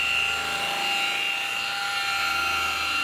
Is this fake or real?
real